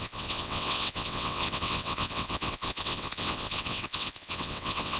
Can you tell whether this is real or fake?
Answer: fake